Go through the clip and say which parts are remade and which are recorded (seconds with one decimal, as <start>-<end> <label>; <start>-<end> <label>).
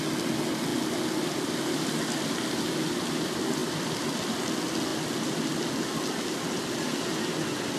0.0-3.6 recorded; 3.6-4.3 remade; 4.3-6.9 recorded; 6.9-7.8 remade